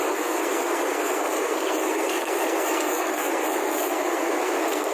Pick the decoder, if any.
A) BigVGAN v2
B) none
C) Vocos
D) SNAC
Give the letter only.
D